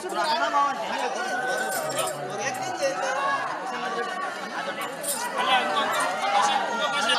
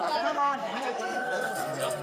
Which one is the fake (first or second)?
second